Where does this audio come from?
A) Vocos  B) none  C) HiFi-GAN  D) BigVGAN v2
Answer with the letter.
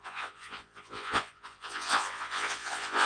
A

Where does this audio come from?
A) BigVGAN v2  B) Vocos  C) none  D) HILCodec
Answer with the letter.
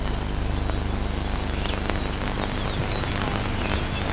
C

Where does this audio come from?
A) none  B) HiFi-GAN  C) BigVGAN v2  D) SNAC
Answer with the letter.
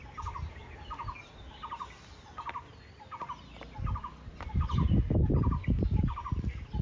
A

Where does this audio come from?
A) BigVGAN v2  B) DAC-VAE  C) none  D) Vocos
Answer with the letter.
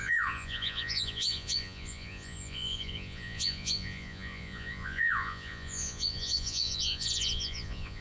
D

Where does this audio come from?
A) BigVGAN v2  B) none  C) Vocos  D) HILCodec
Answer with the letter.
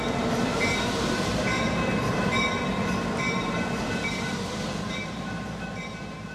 A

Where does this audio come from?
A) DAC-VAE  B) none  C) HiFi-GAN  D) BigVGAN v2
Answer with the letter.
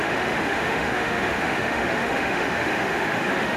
A